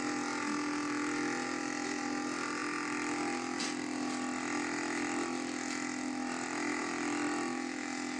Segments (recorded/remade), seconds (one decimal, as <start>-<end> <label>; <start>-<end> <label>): 0.0-8.2 recorded